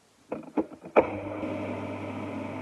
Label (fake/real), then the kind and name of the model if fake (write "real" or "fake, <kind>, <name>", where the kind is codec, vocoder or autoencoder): real